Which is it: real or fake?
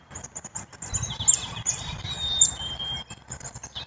real